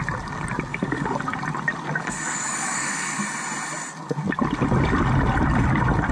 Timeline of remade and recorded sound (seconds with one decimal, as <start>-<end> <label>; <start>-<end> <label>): 0.0-0.7 recorded; 0.7-1.2 remade; 1.2-2.0 recorded; 2.0-3.2 remade; 3.2-6.1 recorded